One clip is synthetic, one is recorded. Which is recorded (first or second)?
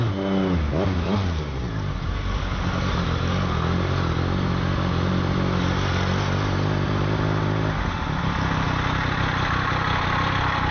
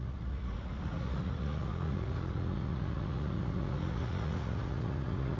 first